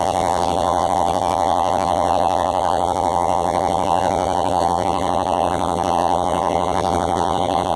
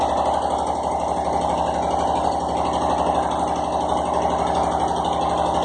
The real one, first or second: second